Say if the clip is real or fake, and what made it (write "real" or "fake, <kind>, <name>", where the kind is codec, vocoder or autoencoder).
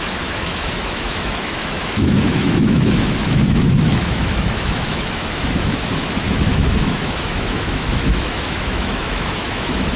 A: fake, autoencoder, DAC-VAE